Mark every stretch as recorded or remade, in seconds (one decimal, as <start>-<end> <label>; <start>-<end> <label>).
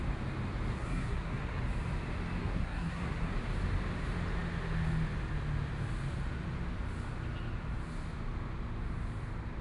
0.0-0.7 recorded; 0.7-1.6 remade; 1.6-2.4 recorded; 2.4-3.3 remade; 3.3-9.6 recorded